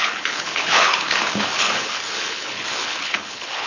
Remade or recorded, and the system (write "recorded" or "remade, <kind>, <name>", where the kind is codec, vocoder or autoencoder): remade, codec, HILCodec